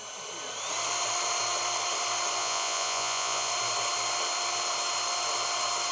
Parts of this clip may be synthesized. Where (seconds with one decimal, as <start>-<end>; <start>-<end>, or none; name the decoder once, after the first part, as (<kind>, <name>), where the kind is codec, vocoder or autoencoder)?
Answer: 2.4-3.5 (vocoder, Vocos)